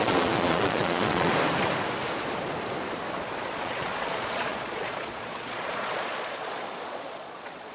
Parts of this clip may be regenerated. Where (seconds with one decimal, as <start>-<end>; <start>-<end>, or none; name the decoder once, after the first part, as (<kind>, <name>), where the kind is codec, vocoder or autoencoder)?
0.0-1.3 (vocoder, Vocos); 3.5-7.7